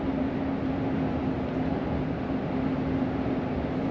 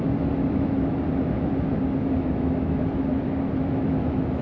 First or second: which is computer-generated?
second